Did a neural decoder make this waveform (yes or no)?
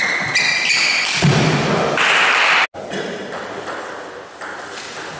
no